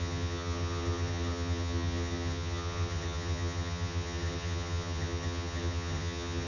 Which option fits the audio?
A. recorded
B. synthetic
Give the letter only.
B